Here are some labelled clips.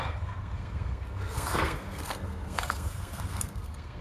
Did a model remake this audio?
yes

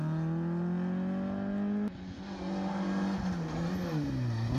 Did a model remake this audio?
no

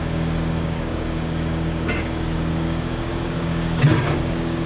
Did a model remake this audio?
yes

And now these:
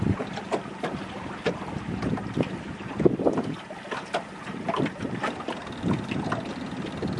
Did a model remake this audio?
no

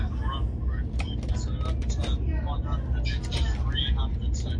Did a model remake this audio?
no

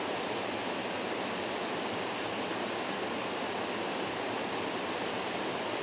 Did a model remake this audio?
no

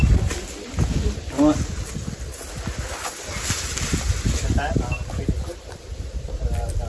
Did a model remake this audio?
no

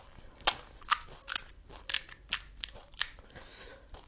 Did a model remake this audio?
no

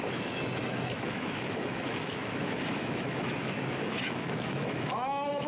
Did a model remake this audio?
yes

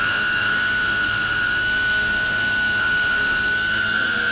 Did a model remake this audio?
yes